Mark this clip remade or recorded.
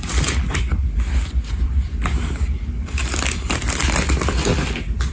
recorded